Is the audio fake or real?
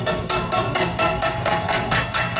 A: fake